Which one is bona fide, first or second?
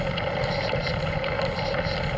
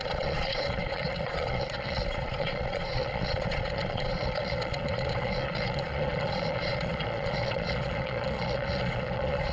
first